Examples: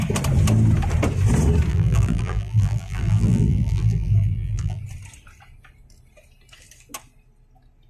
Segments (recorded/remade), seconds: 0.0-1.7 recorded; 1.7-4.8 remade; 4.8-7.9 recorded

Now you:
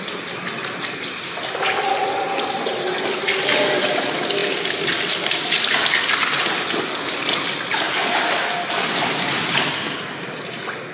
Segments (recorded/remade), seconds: 0.0-10.9 recorded

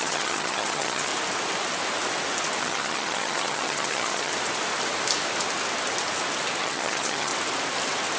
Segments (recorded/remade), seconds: 0.0-1.1 remade; 1.1-2.6 recorded; 2.6-4.3 remade; 4.3-6.6 recorded; 6.6-7.3 remade; 7.3-8.2 recorded

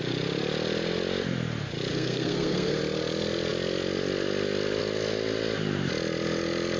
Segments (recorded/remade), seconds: 0.0-1.9 recorded; 1.9-2.8 remade; 2.8-6.8 recorded

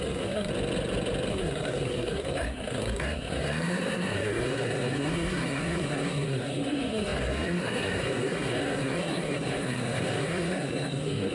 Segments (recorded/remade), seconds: 0.0-0.5 remade; 0.5-1.3 recorded; 1.3-11.3 remade

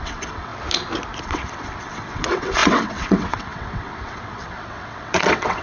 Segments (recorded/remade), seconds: 0.0-0.5 remade; 0.5-1.2 recorded; 1.2-5.6 remade

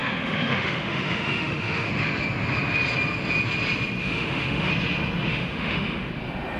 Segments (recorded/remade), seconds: 0.0-1.9 remade; 1.9-4.0 recorded; 4.0-4.7 remade; 4.7-5.3 recorded; 5.3-6.1 remade; 6.1-6.6 recorded

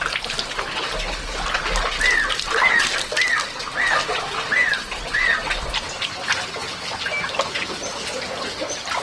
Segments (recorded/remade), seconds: 0.0-9.0 recorded